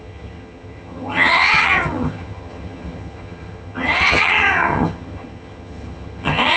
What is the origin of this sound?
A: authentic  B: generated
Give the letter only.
B